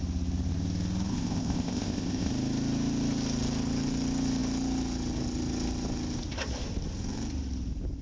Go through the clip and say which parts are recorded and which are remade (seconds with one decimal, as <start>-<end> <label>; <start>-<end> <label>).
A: 0.0-1.1 recorded; 1.1-2.3 remade; 2.3-8.0 recorded

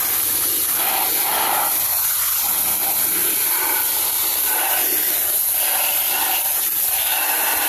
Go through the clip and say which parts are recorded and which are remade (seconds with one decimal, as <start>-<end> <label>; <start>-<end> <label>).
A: 0.0-3.2 recorded; 3.2-5.8 remade; 5.8-7.7 recorded

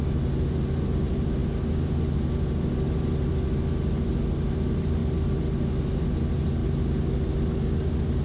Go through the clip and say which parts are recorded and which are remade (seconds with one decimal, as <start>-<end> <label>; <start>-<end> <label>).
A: 0.0-8.2 recorded

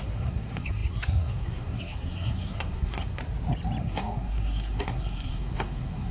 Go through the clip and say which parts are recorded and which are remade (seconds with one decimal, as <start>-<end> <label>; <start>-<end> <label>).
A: 0.0-3.2 remade; 3.2-3.8 recorded; 3.8-6.1 remade

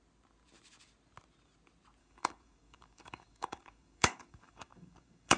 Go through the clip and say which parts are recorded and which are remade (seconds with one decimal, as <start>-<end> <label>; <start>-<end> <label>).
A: 0.0-2.0 recorded; 2.0-5.4 remade